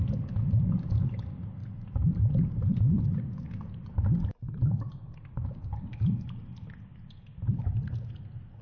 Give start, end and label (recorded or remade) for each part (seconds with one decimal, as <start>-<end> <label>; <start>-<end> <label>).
0.0-8.6 recorded